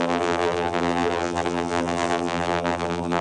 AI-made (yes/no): yes